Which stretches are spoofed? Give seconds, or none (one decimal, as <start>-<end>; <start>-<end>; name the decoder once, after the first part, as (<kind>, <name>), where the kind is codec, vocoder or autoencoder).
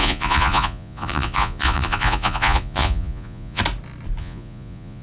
0.0-3.6 (vocoder, Vocos); 4.2-5.0